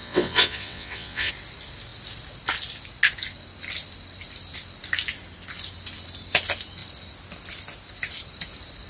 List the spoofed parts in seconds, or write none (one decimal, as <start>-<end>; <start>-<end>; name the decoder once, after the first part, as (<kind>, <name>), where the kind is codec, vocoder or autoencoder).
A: 0.0-1.3 (vocoder, WaveNeXt)